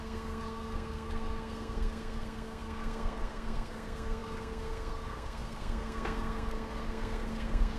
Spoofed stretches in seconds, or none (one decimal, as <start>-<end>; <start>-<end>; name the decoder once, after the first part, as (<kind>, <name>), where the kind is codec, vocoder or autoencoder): 0.0-7.8 (codec, SNAC)